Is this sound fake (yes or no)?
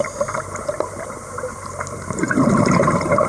yes